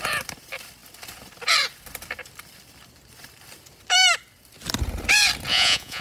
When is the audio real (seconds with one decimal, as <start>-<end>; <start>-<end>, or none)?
0.0-5.5